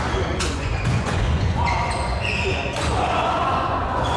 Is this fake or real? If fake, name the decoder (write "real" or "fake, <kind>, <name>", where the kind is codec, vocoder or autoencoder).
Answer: fake, vocoder, Vocos